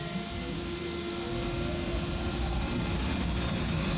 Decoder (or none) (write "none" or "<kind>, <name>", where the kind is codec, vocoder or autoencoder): none